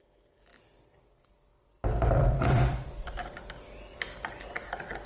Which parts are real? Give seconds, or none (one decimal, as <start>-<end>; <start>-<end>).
0.0-1.5; 3.1-5.1